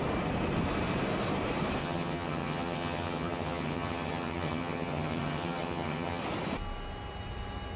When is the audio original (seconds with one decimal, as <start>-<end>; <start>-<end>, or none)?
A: 0.0-1.8; 6.2-7.8